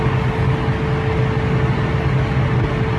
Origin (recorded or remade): recorded